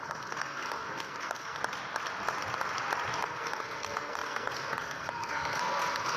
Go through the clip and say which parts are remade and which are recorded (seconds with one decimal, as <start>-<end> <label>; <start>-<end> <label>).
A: 0.0-1.6 remade; 1.6-3.2 recorded; 3.2-6.2 remade